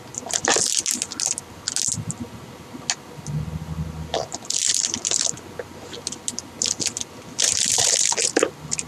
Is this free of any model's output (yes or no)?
yes